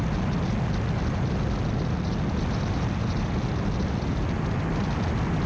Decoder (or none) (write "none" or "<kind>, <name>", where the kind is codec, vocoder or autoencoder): none